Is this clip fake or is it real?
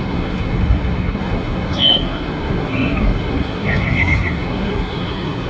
fake